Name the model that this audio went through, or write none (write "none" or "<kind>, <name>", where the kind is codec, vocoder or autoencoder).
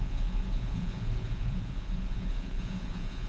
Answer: vocoder, Vocos